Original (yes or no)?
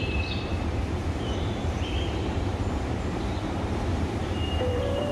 no